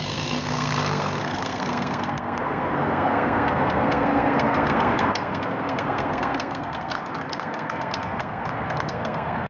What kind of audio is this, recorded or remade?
remade